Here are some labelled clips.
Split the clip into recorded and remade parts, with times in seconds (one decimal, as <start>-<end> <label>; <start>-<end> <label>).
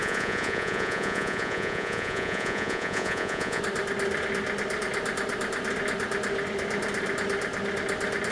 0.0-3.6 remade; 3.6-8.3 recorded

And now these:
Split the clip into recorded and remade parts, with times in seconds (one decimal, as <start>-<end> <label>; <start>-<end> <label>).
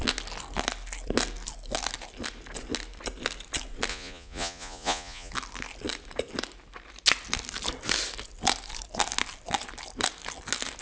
0.0-3.9 recorded; 3.9-5.3 remade; 5.3-10.8 recorded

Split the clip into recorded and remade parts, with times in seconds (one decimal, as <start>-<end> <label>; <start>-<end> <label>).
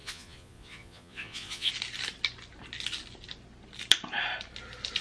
0.0-1.7 remade; 1.7-5.0 recorded